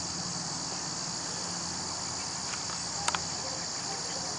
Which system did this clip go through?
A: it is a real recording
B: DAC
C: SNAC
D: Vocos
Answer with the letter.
A